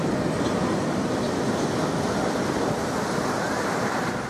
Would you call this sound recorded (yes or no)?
yes